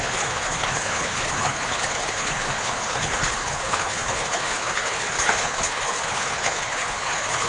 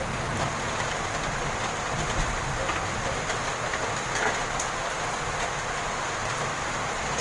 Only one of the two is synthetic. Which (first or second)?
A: first